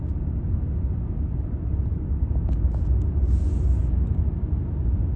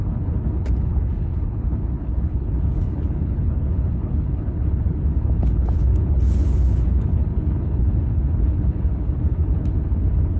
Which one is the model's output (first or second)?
second